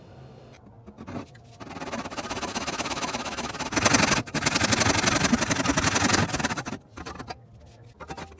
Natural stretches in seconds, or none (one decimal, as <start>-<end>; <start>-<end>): 0.0-2.5; 3.5-8.4